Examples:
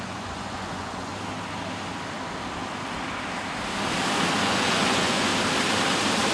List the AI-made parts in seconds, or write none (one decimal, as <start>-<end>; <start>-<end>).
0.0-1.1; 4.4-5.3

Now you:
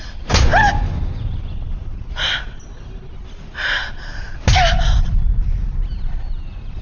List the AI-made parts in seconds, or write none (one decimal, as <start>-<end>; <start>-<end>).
none

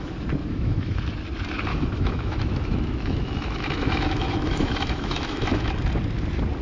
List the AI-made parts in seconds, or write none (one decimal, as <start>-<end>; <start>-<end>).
0.4-1.0; 1.7-5.7

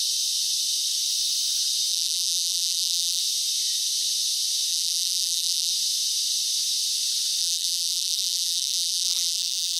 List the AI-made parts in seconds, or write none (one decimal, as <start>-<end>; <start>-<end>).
1.9-3.2; 4.7-5.7; 7.4-9.8

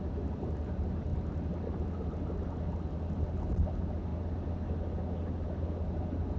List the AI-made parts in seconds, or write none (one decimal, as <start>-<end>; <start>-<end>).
none

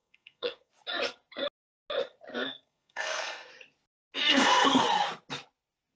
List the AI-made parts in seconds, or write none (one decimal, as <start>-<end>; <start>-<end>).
0.0-0.7; 2.3-3.5; 4.3-4.8